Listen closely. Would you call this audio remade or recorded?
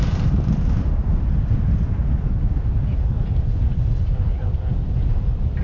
recorded